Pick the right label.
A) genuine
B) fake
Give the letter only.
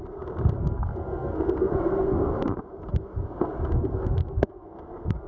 B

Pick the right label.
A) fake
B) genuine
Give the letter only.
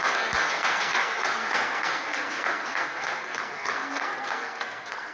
A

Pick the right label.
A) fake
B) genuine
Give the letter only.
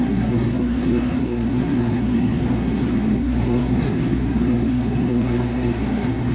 A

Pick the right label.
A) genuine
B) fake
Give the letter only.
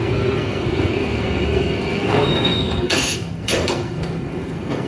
B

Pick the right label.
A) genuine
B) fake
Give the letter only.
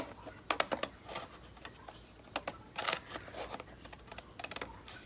A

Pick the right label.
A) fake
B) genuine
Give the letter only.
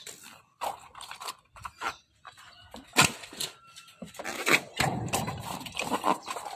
B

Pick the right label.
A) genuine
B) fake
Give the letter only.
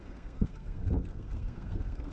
B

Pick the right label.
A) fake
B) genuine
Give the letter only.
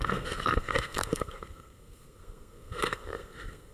A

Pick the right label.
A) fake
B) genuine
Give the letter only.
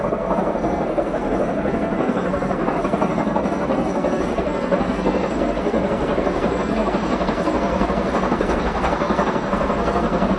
A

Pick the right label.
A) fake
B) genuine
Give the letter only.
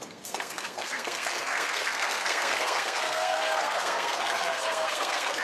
A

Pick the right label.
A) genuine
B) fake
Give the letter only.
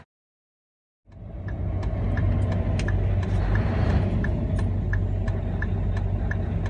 A